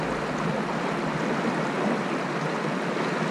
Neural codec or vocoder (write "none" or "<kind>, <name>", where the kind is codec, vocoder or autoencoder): none